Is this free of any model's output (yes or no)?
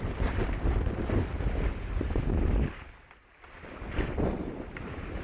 no